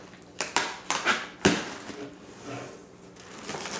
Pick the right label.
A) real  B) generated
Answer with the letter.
A